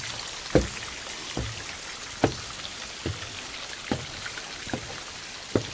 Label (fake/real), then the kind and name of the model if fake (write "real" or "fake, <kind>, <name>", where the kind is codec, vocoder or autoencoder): real